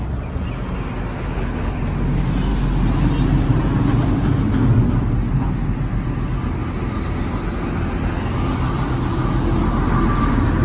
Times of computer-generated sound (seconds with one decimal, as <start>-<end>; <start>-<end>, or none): 1.1-1.8